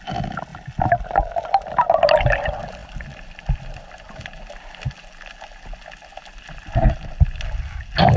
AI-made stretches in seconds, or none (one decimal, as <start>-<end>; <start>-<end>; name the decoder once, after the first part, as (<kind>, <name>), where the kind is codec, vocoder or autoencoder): none